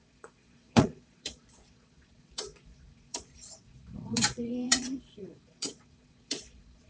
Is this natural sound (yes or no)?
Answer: no